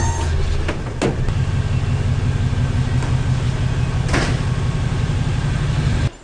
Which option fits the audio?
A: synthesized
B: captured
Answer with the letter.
B